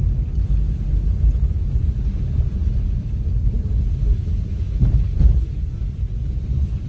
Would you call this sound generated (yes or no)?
no